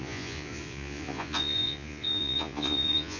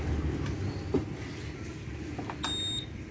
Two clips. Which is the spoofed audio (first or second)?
first